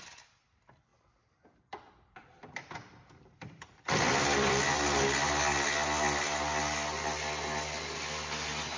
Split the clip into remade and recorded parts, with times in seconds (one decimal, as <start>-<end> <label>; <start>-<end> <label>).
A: 0.0-0.9 recorded; 0.9-4.6 remade; 4.6-8.8 recorded